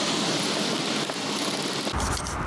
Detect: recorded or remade recorded